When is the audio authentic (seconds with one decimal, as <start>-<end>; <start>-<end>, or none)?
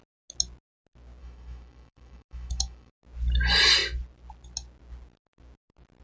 0.0-1.2; 2.9-6.0